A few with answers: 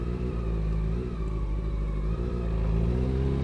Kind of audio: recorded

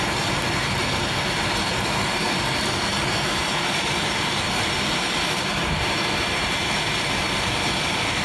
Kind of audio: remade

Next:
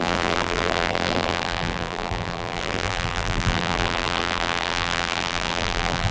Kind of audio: remade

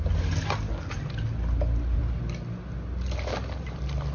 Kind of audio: recorded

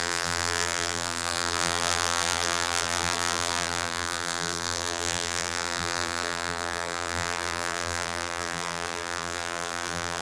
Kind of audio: remade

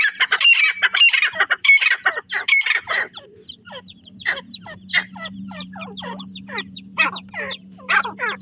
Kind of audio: remade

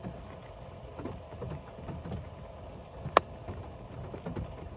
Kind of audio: recorded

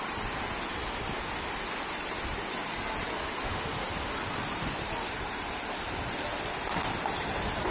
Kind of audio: remade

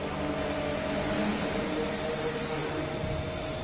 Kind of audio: recorded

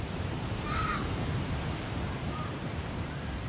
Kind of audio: remade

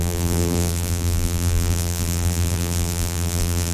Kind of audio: remade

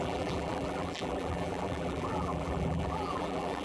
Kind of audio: remade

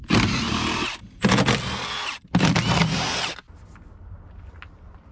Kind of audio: recorded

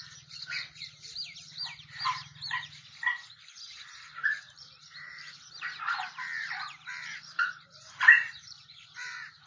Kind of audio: remade